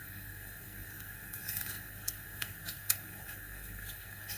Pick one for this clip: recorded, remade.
remade